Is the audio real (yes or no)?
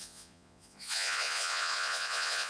no